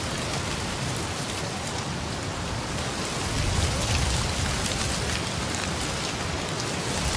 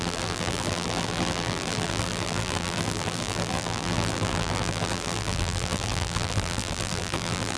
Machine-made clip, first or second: second